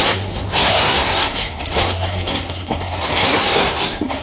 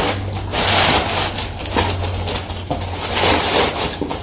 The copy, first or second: first